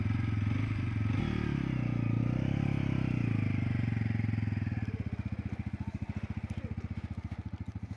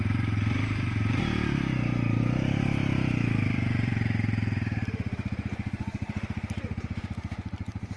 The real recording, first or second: first